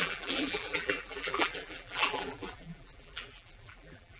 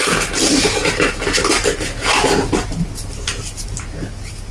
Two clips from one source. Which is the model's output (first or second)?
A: first